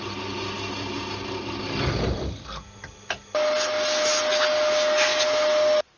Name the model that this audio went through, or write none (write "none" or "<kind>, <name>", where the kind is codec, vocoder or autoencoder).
none